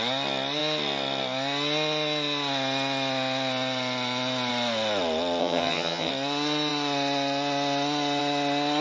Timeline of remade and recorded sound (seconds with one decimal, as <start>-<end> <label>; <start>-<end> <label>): 0.0-5.4 recorded; 5.4-6.1 remade; 6.1-8.8 recorded